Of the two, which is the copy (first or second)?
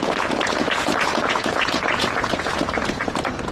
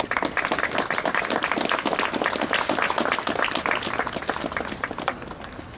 first